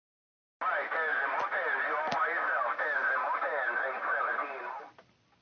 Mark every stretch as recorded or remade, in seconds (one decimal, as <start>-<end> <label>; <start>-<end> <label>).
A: 0.0-5.4 recorded